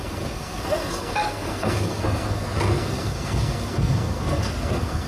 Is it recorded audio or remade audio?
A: remade